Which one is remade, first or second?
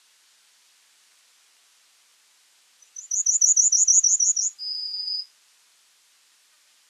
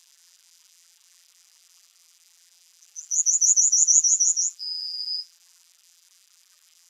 second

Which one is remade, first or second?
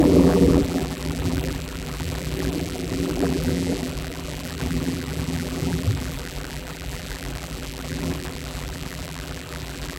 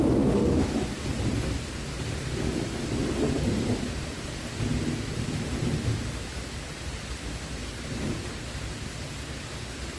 first